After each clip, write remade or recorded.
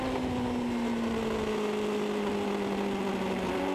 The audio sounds recorded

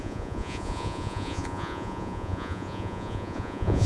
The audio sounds remade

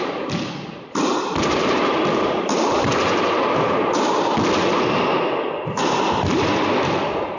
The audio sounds recorded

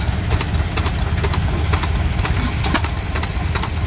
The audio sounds recorded